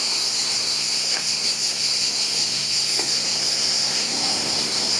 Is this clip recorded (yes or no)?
no